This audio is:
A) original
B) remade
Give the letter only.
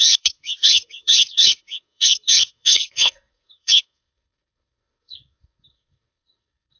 B